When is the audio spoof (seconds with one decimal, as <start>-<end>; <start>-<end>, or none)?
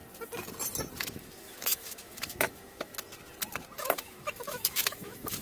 1.0-2.9; 3.8-5.4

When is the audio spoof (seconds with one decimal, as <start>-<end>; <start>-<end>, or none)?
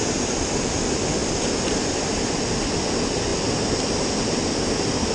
none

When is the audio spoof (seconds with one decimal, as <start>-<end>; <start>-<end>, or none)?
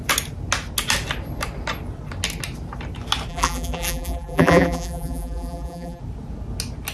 3.3-6.0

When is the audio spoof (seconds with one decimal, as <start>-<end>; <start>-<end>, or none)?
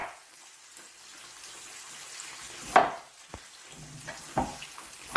none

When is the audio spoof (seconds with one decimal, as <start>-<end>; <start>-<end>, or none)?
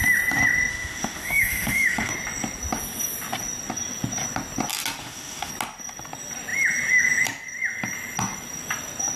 0.7-2.1; 5.0-5.5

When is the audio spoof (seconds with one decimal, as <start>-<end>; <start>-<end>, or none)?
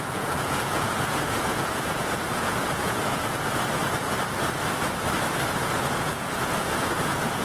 0.0-3.8; 5.6-7.4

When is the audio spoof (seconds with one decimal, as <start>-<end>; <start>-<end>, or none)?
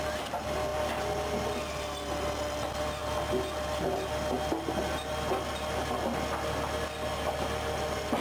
none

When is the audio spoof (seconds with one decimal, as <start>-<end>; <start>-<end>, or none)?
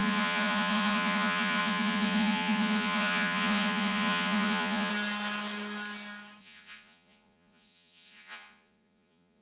0.0-4.9; 6.4-9.4